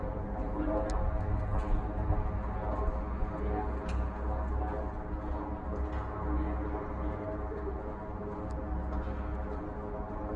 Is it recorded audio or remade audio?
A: recorded